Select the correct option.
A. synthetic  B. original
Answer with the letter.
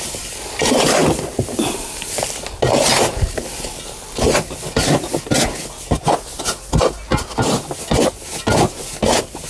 B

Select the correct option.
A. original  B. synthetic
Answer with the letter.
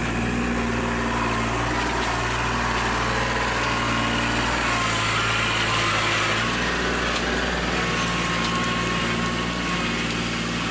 A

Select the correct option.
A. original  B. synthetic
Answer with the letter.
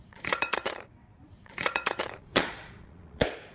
B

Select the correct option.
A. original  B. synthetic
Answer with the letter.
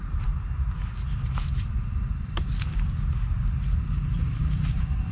A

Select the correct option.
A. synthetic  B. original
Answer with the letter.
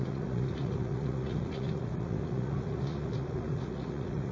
A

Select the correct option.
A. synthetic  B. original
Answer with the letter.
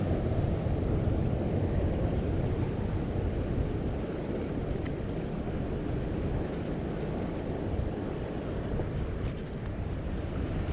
B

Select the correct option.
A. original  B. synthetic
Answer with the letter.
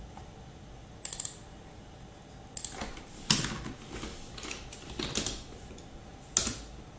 A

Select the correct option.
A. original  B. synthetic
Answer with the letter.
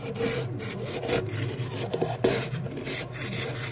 A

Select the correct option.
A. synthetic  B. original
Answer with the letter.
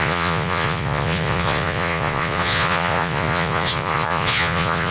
A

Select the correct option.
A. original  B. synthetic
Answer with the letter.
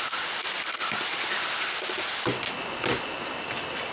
A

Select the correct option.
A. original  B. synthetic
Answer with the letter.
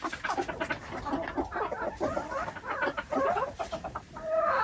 A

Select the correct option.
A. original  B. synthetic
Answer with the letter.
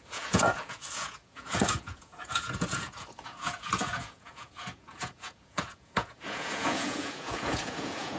B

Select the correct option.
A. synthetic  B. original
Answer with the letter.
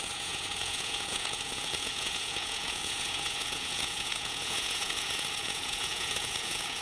A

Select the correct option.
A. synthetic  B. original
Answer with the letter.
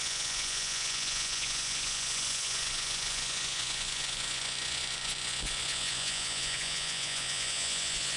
A